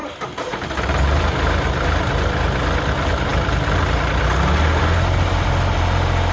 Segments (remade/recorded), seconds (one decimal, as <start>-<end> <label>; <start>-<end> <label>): 0.0-6.3 recorded